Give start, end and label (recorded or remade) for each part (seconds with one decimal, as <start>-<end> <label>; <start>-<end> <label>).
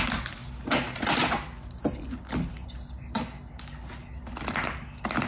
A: 0.0-5.3 recorded